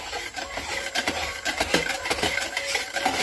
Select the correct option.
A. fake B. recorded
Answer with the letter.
A